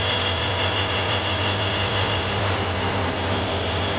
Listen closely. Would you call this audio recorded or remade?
recorded